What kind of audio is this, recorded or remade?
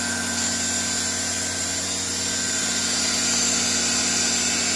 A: recorded